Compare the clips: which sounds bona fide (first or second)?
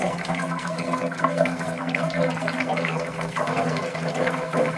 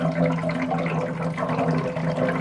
second